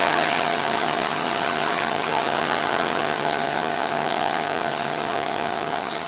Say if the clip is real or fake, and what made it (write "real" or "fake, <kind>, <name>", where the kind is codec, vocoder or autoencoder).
fake, vocoder, HiFi-GAN